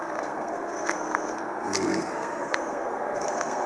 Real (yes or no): no